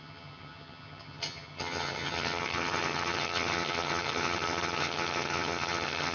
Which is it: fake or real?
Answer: fake